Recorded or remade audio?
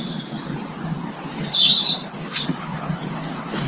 recorded